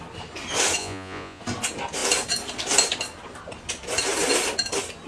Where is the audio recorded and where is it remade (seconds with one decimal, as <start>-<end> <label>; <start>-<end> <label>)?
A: 0.0-0.8 recorded; 0.8-1.4 remade; 1.4-5.1 recorded